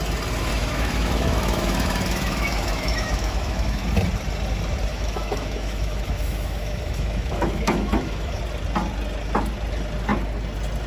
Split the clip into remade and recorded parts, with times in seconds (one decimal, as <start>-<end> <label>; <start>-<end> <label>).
0.0-0.5 recorded; 0.5-3.9 remade; 3.9-4.9 recorded; 4.9-8.4 remade; 8.4-10.9 recorded